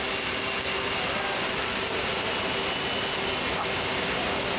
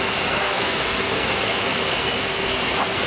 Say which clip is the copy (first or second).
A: second